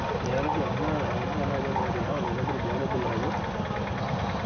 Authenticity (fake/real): real